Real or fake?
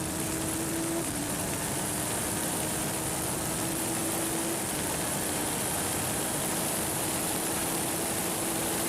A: fake